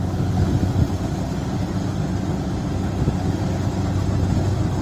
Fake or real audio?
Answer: real